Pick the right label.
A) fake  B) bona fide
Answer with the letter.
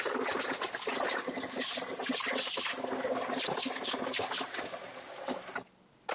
B